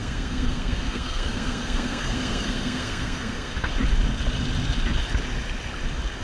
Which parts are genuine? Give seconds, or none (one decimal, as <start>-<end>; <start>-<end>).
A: 3.7-6.2

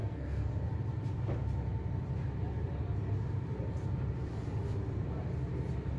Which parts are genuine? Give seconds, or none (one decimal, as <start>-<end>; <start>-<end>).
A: 0.5-6.0

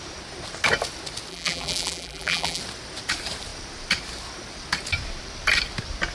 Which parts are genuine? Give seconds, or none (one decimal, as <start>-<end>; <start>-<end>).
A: 0.0-1.3; 2.6-6.1

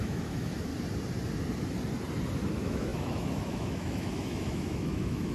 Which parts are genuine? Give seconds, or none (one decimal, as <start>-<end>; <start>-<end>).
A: 0.7-2.5

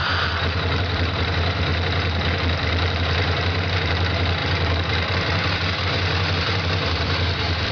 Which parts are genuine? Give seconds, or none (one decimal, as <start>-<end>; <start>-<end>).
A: 0.0-0.8; 1.7-2.9; 4.4-5.8

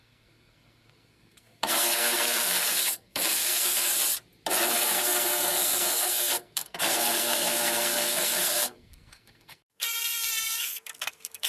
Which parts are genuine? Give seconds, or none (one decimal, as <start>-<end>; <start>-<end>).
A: 3.9-4.7

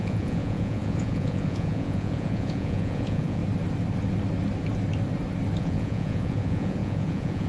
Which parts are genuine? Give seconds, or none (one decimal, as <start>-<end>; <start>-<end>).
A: 3.4-5.6